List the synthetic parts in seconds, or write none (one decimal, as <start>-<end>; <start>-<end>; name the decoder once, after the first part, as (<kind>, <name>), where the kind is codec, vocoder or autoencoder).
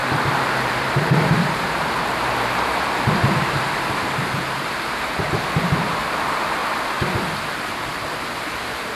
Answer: 0.0-6.6 (vocoder, BigVGAN v2); 7.5-8.9